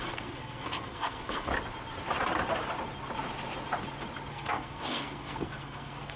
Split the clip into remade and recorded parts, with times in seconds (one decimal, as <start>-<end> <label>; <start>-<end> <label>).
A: 0.0-1.5 remade; 1.5-4.3 recorded; 4.3-6.2 remade